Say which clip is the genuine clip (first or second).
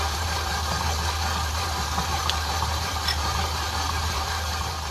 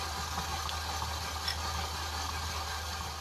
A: second